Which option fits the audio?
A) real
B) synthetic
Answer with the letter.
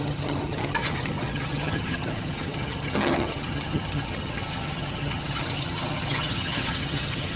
B